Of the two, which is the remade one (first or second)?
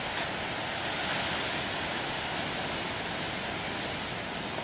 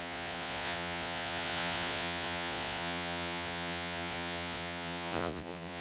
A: second